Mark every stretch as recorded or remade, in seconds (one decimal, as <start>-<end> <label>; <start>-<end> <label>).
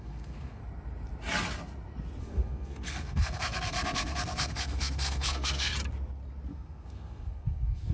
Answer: 0.0-0.6 remade; 0.6-2.2 recorded; 2.2-5.7 remade; 5.7-6.5 recorded; 6.5-7.9 remade